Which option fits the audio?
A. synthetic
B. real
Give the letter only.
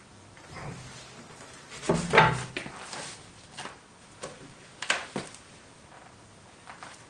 B